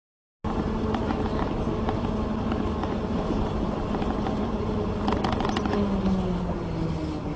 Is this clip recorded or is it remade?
recorded